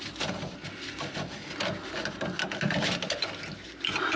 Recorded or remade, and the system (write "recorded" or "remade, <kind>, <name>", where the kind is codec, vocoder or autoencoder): recorded